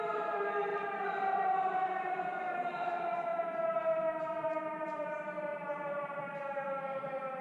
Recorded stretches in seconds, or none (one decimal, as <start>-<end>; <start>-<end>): 3.3-4.2